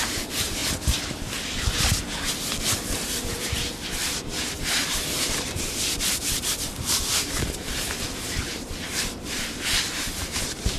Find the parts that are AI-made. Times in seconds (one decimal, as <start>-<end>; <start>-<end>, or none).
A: 0.0-0.6; 2.9-10.8